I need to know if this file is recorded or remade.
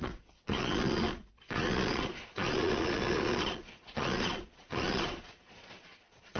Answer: remade